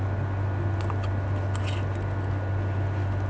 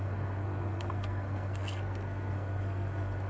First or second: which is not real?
second